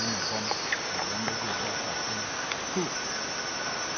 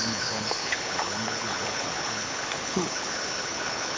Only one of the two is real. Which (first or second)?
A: first